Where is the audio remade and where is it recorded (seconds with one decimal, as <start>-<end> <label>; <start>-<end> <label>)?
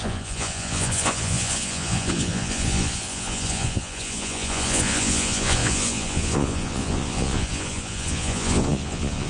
0.0-9.3 remade